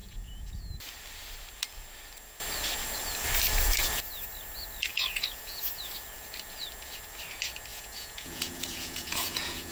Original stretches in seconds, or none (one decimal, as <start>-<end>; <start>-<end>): 0.6-4.9; 5.9-7.7